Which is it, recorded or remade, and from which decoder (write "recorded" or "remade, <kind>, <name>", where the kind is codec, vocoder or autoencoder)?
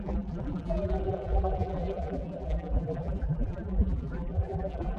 remade, vocoder, BigVGAN v2